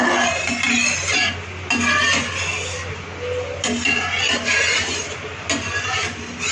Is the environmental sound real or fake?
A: real